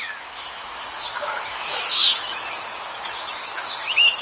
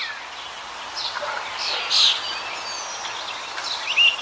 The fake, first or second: first